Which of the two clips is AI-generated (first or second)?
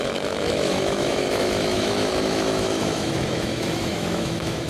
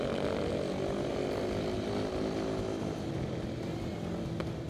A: first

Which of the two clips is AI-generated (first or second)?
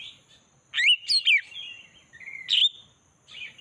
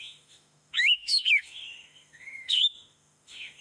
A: second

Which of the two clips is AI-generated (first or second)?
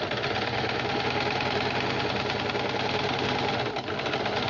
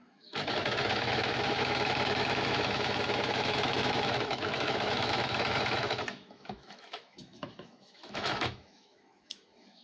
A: second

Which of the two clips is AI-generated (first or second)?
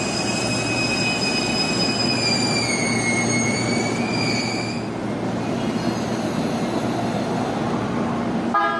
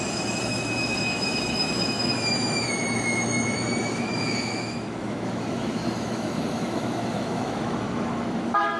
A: second